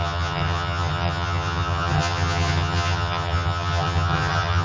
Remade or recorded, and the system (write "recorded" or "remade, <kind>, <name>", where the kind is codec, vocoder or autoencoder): remade, vocoder, HiFi-GAN